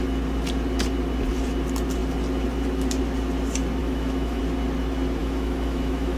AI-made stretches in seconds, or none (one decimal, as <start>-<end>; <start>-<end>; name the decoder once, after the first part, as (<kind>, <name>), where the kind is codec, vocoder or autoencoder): 3.8-4.4 (autoencoder, DAC-VAE); 5.2-6.2